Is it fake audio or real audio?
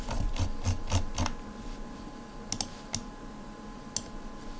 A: real